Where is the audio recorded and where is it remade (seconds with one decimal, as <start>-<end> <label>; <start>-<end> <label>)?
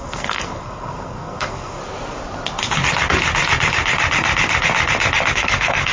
0.0-1.8 remade; 1.8-5.3 recorded; 5.3-5.9 remade